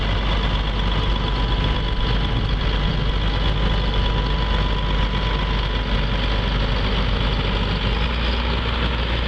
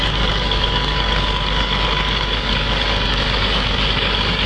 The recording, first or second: first